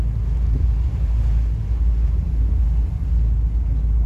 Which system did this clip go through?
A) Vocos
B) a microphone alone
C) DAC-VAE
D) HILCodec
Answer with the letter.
B